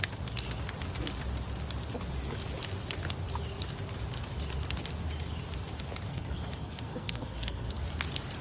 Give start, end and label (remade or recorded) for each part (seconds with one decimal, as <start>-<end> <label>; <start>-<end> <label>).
0.0-6.1 recorded; 6.1-7.8 remade; 7.8-8.4 recorded